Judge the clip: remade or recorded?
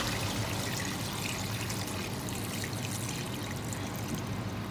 recorded